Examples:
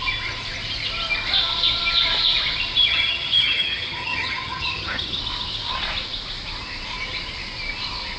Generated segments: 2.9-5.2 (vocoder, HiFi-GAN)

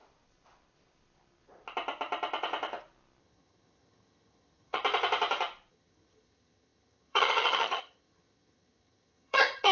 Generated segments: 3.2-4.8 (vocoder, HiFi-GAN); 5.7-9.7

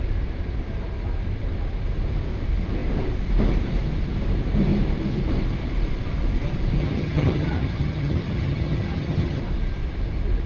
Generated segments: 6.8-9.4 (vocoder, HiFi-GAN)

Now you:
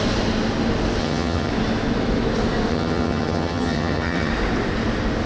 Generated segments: 1.0-1.5 (vocoder, HiFi-GAN); 2.7-4.3

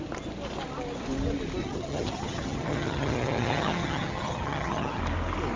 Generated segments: 1.6-5.0 (vocoder, HiFi-GAN)

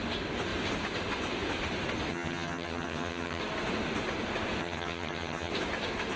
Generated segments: 2.1-3.4 (vocoder, HiFi-GAN); 4.6-5.5

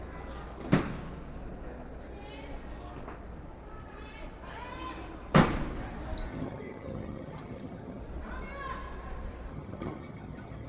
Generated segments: 6.3-8.0 (vocoder, HiFi-GAN); 9.5-10.7